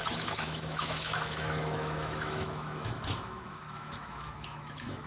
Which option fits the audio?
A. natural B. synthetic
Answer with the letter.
B